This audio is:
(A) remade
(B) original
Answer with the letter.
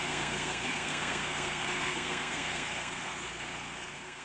A